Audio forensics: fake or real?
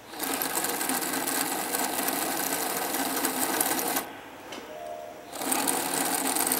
real